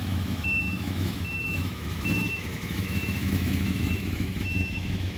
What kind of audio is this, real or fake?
fake